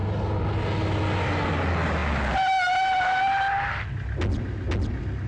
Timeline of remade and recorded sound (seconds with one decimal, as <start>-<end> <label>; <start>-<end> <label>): 0.0-5.3 recorded